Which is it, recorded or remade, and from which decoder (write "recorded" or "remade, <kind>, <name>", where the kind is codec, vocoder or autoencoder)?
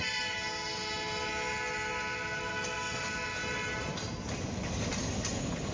recorded